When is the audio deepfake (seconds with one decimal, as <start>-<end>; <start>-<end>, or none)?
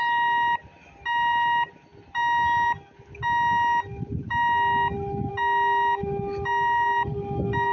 none